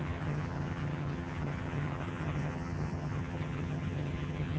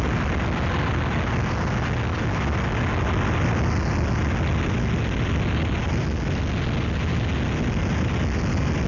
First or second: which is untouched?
second